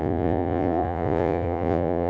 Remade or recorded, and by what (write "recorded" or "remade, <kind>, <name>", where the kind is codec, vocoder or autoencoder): remade, vocoder, Vocos